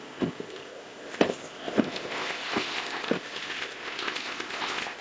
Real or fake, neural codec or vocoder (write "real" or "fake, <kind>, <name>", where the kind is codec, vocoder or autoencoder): fake, codec, ZipCodec